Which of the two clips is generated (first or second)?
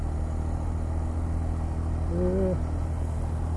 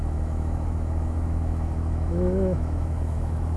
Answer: second